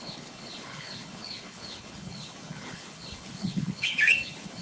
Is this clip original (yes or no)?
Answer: no